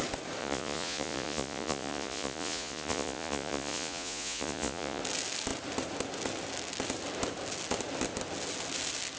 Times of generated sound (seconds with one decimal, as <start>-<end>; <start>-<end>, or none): 0.4-5.0